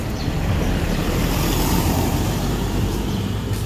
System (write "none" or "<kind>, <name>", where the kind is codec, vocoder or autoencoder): vocoder, BigVGAN v2